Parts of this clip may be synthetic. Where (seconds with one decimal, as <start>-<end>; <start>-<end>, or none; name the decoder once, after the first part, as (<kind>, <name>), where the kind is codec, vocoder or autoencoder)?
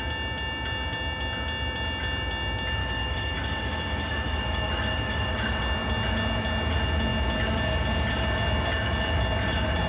2.8-5.6 (autoencoder, DAC-VAE)